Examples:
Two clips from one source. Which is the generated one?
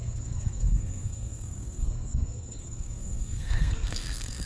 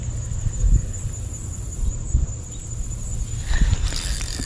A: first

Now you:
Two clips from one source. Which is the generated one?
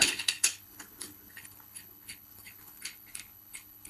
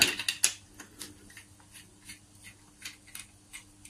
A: first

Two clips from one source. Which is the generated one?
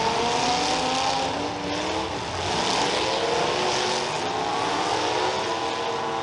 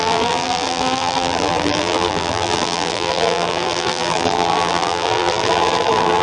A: second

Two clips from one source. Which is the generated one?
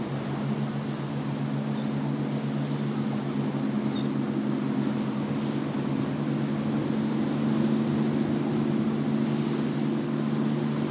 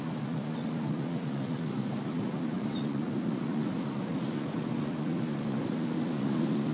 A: second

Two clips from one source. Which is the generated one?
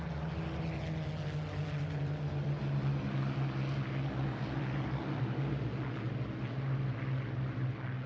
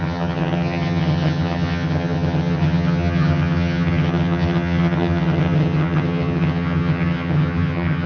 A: second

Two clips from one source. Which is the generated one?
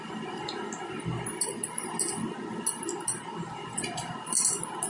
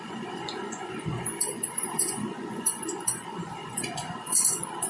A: second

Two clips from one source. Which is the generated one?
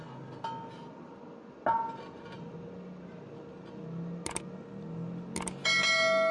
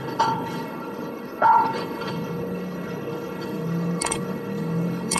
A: second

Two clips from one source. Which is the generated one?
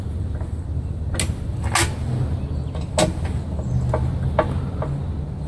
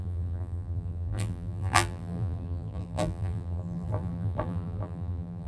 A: second